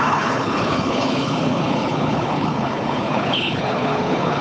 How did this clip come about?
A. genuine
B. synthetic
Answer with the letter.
B